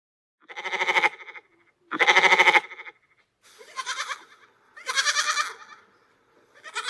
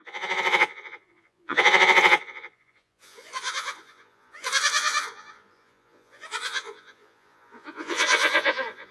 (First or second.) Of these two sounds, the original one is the first